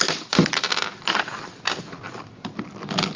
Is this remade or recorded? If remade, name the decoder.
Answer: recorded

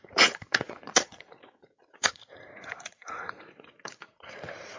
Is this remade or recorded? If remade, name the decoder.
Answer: remade, vocoder, Vocos